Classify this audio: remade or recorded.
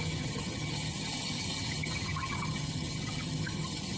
remade